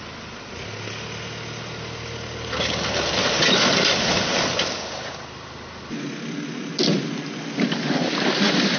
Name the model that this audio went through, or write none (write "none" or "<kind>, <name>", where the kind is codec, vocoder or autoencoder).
none